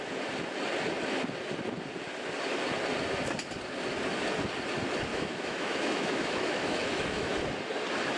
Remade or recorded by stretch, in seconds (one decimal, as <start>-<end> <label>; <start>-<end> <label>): 0.0-5.1 recorded; 5.1-7.4 remade; 7.4-8.2 recorded